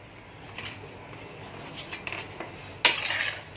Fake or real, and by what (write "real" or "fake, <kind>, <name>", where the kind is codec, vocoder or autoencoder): real